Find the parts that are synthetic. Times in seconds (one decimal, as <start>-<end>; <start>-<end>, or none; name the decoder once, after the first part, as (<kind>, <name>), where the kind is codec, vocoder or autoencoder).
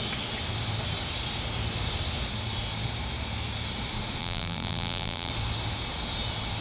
4.2-5.3 (vocoder, BigVGAN v2)